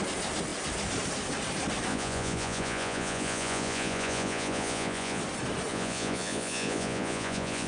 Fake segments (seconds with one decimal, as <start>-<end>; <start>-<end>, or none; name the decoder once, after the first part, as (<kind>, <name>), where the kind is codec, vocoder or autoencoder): 1.9-5.2 (vocoder, Vocos); 5.7-7.7